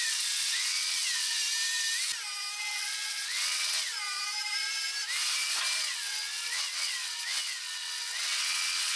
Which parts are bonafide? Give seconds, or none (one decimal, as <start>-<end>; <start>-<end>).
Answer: 1.4-2.6; 3.9-5.8